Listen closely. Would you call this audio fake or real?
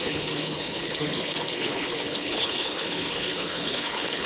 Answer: fake